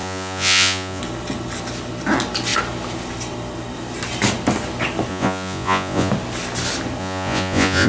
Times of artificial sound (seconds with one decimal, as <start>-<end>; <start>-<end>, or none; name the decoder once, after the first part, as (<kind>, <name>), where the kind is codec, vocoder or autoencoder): 0.0-1.0 (vocoder, Vocos); 5.1-6.1; 7.0-7.9